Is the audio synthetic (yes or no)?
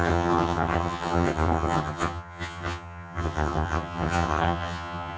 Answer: yes